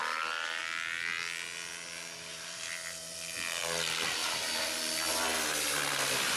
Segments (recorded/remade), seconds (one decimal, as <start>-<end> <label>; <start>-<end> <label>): 0.0-0.6 remade; 0.6-2.3 recorded; 2.3-3.6 remade; 3.6-4.2 recorded; 4.2-5.1 remade; 5.1-6.4 recorded